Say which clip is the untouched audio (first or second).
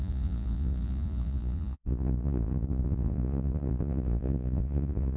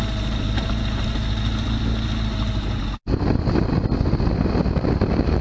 second